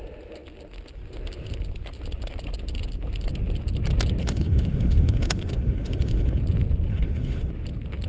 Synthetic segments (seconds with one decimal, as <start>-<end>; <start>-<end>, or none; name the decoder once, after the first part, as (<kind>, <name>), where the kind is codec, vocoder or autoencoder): 4.2-6.4 (autoencoder, DAC-VAE); 6.9-7.5